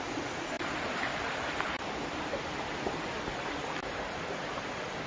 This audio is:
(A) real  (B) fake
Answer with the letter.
A